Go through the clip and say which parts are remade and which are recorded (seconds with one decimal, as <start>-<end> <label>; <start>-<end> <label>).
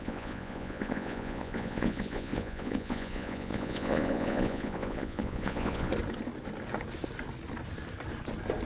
0.0-5.9 remade; 5.9-8.7 recorded